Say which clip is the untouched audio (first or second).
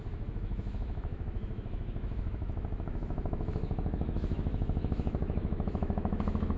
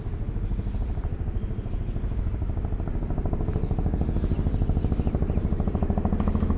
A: second